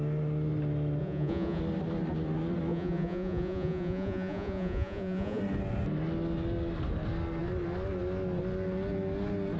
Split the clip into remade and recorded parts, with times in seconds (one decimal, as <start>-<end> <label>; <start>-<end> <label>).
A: 0.0-1.0 recorded; 1.0-1.6 remade; 1.6-2.7 recorded; 2.7-5.4 remade; 5.4-9.6 recorded

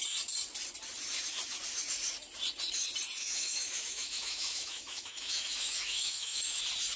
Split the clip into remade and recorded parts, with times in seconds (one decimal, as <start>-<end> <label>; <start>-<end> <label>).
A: 0.0-3.2 recorded; 3.2-6.6 remade; 6.6-7.0 recorded

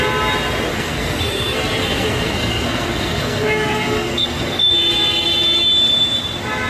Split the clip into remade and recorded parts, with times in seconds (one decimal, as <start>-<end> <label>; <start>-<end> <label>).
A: 0.0-0.7 recorded; 0.7-4.7 remade; 4.7-6.7 recorded